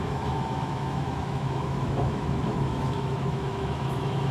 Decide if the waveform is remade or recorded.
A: remade